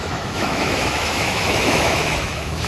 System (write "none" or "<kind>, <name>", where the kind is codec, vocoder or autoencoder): autoencoder, DAC-VAE